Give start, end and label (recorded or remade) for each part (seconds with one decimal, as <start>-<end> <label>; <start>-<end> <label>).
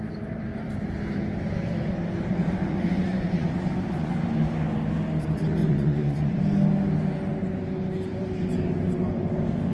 0.0-2.3 recorded; 2.3-4.1 remade; 4.1-5.6 recorded; 5.6-6.4 remade; 6.4-9.7 recorded